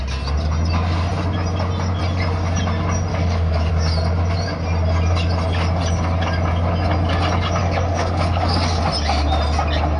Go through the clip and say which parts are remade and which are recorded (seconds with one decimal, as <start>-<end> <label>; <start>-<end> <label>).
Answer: 0.0-3.1 recorded; 3.1-3.7 remade; 3.7-7.6 recorded; 7.6-8.8 remade; 8.8-10.0 recorded